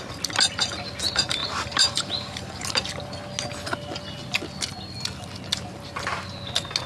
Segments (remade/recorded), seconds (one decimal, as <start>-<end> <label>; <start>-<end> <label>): 0.0-1.4 recorded; 1.4-2.9 remade; 2.9-6.9 recorded